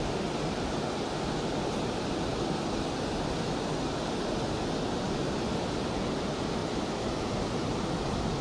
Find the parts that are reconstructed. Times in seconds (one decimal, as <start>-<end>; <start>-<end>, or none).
none